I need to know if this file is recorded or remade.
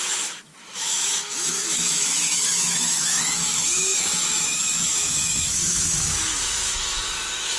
remade